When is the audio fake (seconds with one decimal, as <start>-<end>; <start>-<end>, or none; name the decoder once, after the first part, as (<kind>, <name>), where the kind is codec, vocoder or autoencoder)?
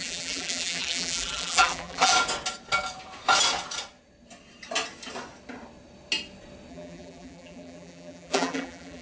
0.0-2.1 (vocoder, BigVGAN v2); 6.7-9.0